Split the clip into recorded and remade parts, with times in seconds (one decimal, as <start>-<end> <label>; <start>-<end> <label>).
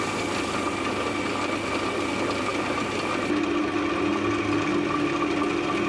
0.0-5.9 recorded